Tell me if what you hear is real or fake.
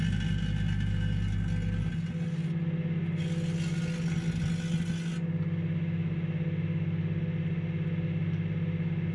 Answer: real